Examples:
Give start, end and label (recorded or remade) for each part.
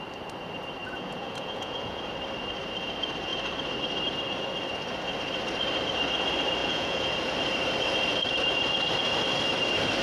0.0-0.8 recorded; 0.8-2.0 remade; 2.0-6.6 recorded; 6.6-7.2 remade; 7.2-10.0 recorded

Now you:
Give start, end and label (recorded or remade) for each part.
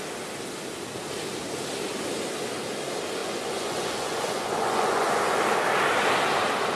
0.0-3.2 recorded; 3.2-5.4 remade; 5.4-6.8 recorded